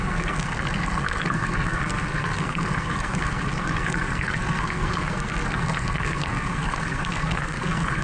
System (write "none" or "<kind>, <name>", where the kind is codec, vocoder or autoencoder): codec, SNAC